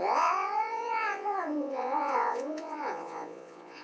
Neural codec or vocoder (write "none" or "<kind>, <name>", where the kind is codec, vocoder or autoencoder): vocoder, Vocos